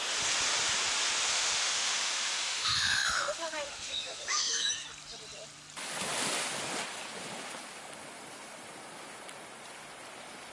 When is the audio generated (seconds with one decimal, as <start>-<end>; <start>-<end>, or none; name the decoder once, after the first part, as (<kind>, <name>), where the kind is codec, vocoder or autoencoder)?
1.3-4.7 (autoencoder, DAC-VAE)